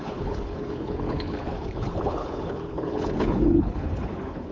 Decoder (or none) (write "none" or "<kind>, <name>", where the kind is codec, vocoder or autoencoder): codec, HILCodec